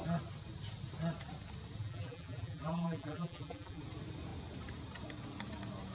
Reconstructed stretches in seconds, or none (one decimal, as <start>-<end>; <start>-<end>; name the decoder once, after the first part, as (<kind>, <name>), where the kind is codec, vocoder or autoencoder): 1.8-3.8 (vocoder, BigVGAN v2)